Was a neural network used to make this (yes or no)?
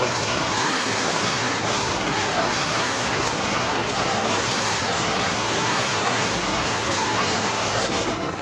yes